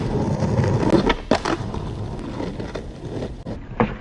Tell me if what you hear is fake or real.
real